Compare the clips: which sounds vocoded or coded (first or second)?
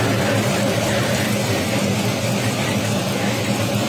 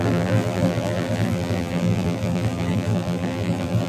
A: second